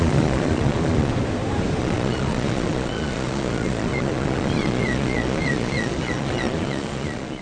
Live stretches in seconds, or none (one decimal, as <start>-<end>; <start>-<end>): 1.1-1.8